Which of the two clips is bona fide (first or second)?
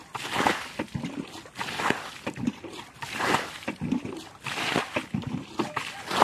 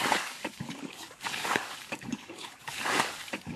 first